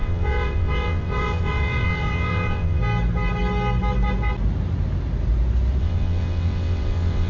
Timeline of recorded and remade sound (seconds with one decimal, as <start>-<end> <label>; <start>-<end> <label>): 0.0-2.8 remade; 2.8-5.8 recorded; 5.8-7.3 remade